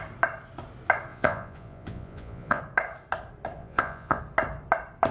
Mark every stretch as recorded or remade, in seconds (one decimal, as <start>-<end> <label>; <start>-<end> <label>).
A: 0.0-1.1 recorded; 1.1-2.6 remade; 2.6-3.6 recorded; 3.6-4.2 remade; 4.2-5.1 recorded